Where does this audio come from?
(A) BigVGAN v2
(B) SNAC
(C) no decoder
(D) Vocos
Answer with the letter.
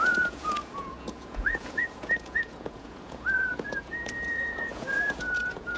D